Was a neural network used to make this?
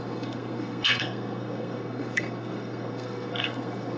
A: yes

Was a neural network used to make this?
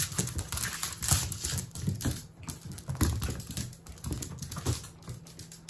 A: no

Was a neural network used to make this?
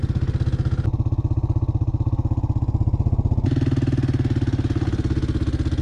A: no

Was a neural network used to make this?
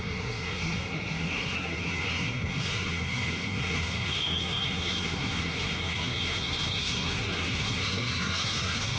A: yes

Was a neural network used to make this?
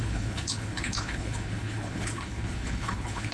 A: yes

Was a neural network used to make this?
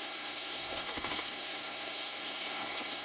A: yes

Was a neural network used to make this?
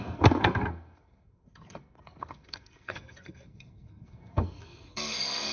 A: yes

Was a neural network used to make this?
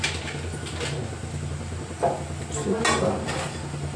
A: no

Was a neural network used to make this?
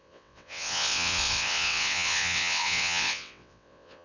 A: yes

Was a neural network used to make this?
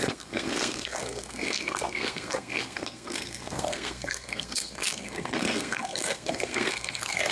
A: yes